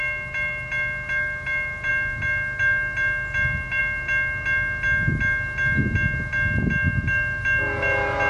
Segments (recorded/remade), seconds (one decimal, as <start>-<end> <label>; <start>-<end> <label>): 0.0-8.3 recorded